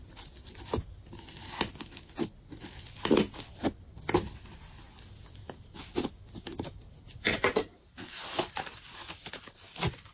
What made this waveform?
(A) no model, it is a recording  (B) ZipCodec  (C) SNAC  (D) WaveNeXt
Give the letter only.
A